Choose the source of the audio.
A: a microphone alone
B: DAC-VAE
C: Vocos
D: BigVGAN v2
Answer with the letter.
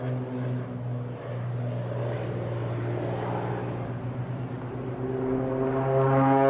A